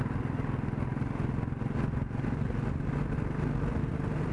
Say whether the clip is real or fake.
real